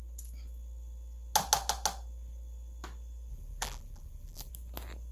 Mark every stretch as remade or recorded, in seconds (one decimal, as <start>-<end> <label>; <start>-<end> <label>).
0.0-3.3 recorded; 3.3-4.5 remade; 4.5-5.1 recorded